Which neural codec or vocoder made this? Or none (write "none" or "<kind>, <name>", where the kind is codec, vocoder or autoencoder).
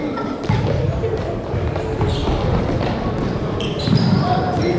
vocoder, BigVGAN v2